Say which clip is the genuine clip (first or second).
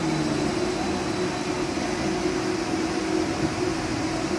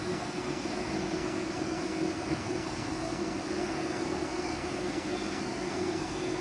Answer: first